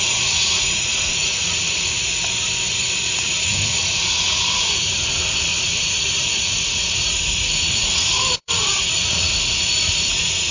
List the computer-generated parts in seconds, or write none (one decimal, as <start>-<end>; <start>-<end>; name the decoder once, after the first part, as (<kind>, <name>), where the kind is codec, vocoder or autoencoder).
0.0-2.1 (vocoder, Vocos); 2.7-10.5

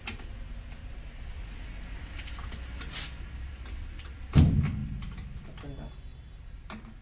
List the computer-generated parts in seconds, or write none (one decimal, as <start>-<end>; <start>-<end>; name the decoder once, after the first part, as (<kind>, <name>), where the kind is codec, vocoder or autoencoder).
0.8-4.2 (vocoder, BigVGAN v2); 6.1-7.0

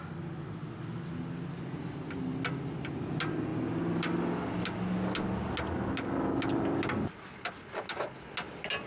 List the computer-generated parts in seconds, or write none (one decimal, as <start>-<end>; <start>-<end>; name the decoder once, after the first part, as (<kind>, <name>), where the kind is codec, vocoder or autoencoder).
none

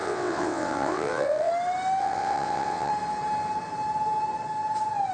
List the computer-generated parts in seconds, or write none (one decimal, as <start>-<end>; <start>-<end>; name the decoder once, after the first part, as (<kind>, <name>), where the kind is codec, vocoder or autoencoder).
0.0-1.5 (vocoder, WaveNeXt); 2.0-2.9

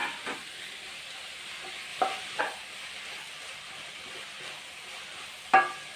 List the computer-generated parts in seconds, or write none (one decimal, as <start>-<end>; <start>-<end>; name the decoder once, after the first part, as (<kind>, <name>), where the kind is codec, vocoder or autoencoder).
none

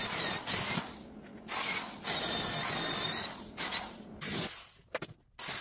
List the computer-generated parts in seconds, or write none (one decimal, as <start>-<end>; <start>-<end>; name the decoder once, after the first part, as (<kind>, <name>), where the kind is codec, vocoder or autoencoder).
none